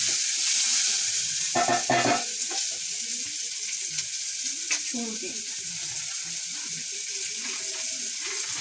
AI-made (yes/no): no